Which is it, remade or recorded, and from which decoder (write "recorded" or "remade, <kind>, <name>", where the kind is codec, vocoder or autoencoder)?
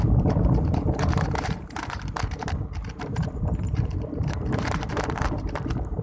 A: remade, vocoder, BigVGAN v2